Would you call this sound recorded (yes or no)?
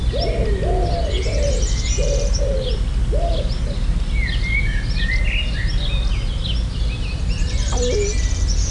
yes